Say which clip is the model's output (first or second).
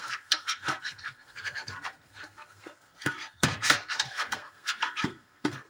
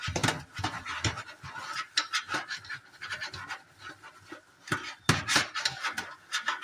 first